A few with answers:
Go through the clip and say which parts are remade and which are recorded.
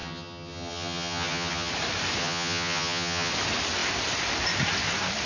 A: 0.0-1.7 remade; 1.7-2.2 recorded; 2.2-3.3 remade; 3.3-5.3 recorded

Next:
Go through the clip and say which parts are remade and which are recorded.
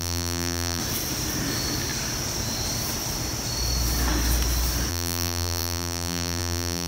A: 0.0-0.8 remade; 0.8-4.9 recorded; 4.9-6.9 remade